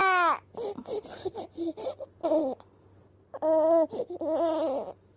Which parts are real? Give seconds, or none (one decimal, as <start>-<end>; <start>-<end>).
0.0-5.2